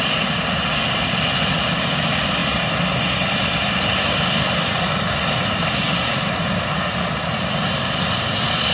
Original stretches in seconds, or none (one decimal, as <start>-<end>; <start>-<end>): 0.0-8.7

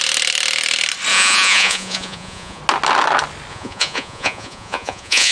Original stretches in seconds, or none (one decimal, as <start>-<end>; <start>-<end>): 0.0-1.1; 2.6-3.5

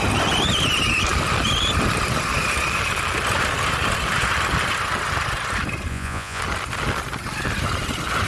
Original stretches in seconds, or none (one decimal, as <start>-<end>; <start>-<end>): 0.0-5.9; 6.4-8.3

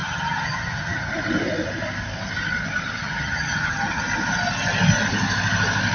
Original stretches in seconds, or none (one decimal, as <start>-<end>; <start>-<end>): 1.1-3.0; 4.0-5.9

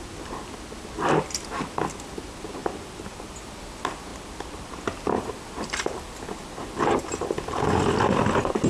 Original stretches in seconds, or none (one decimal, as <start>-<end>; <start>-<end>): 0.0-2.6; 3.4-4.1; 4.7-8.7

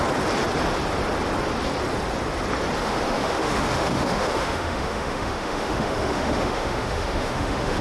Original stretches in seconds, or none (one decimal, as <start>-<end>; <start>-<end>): 0.0-2.8